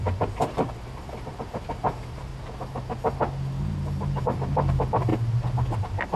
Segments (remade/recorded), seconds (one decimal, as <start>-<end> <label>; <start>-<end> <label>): 0.0-2.3 remade; 2.3-4.2 recorded; 4.2-5.1 remade; 5.1-5.8 recorded; 5.8-6.2 remade